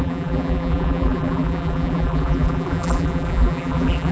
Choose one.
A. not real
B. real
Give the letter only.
A